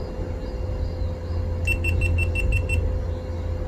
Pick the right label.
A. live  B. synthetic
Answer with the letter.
A